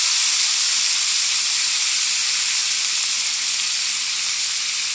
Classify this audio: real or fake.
real